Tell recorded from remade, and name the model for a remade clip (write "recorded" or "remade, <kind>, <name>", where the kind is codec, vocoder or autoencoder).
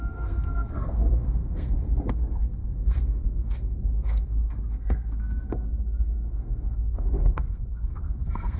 remade, codec, SNAC